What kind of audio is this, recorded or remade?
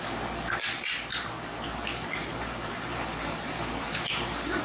remade